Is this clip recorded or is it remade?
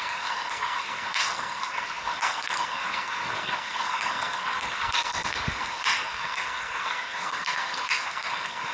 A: remade